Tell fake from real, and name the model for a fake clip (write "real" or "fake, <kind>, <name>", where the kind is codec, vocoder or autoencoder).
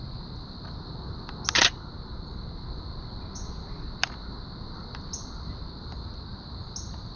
real